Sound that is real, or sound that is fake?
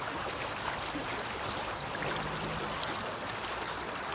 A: fake